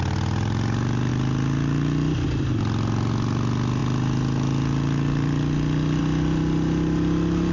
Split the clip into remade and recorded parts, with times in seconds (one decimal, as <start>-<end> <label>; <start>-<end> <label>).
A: 0.0-7.5 recorded